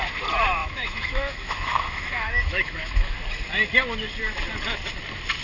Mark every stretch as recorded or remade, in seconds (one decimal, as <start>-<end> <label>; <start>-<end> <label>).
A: 0.0-0.6 recorded; 0.6-3.1 remade; 3.1-5.4 recorded